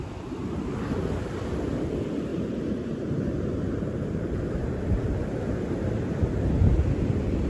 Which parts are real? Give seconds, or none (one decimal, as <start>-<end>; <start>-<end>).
0.0-2.3; 6.3-7.5